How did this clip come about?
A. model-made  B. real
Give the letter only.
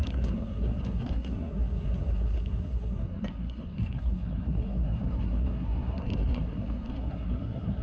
A